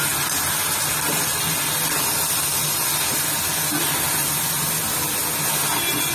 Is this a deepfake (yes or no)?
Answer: no